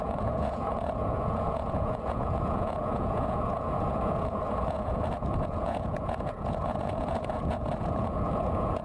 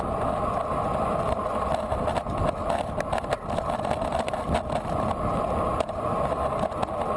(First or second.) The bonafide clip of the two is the second